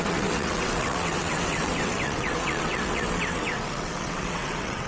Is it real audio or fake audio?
fake